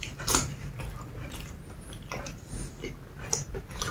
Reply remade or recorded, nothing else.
recorded